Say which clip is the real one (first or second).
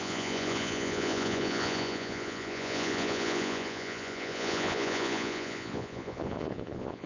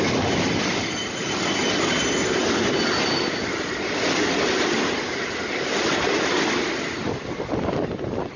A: second